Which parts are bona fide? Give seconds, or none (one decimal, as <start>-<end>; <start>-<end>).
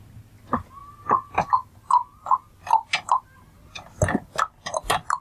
0.0-5.2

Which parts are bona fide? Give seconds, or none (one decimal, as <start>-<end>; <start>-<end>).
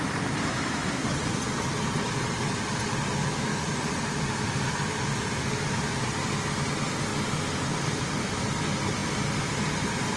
0.0-3.5; 4.0-10.2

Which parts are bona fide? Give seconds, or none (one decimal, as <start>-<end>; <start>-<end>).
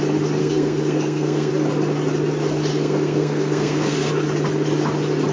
0.0-0.4; 1.5-2.7; 4.1-5.3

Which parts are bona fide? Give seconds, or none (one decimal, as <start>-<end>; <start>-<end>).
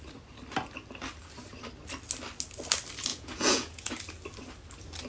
0.0-3.1; 3.9-5.1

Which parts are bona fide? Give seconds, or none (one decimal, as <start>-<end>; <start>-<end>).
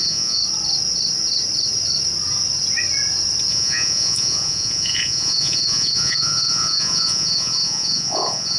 0.4-3.5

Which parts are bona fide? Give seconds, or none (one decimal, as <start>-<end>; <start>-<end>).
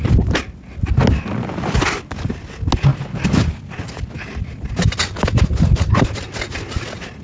0.0-7.2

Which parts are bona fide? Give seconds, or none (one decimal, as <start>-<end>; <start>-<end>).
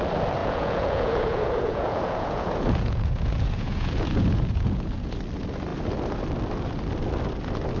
0.0-0.4; 5.1-7.8